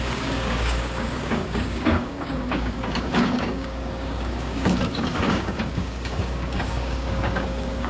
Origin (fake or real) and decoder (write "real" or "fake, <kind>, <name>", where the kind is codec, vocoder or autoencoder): fake, codec, DAC